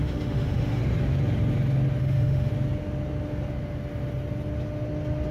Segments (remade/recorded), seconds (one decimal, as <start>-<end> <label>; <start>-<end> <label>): 0.0-0.8 remade; 0.8-2.0 recorded; 2.0-2.5 remade; 2.5-5.3 recorded